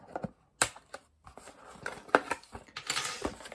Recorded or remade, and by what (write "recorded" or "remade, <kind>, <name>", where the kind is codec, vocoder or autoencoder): recorded